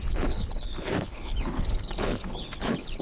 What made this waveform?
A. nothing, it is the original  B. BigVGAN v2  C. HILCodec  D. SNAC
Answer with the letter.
C